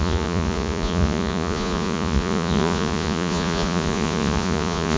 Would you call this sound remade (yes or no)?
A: yes